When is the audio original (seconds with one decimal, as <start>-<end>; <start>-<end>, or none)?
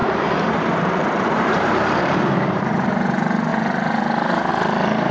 2.6-5.1